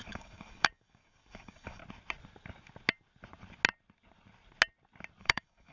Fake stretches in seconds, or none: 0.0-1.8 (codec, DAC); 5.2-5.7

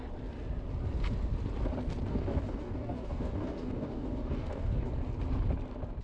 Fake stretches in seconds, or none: 2.1-4.9 (codec, DAC)

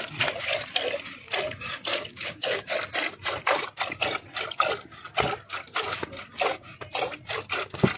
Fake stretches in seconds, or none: 1.9-2.7 (codec, DAC)